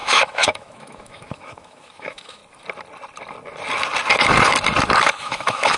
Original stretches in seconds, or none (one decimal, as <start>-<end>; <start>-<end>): 2.4-5.1